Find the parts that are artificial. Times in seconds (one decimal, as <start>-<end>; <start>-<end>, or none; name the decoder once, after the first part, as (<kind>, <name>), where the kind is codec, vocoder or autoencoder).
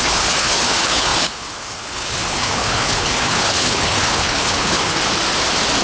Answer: 0.0-5.0 (codec, HILCodec)